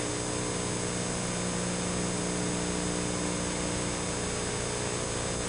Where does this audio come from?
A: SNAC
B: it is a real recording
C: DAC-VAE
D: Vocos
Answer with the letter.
B